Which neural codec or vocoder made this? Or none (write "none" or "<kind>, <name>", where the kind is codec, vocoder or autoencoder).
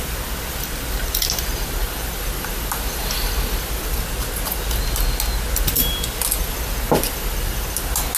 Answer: none